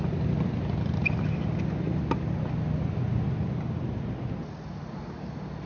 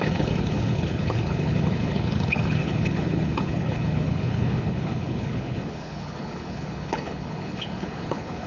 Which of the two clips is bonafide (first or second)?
first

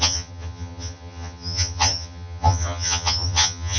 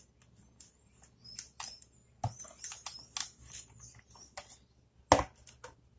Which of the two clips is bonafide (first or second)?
second